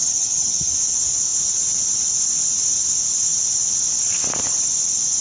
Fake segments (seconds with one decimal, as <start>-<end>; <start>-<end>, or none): 0.0-0.7